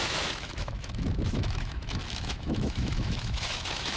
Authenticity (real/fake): fake